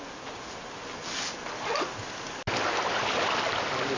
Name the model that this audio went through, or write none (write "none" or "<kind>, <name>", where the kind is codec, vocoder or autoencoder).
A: none